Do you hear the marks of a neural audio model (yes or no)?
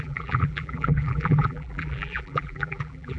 yes